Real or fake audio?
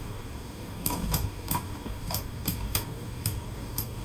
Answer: fake